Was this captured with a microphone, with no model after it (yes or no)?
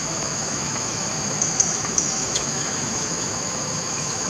no